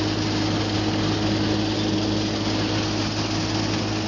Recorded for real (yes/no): yes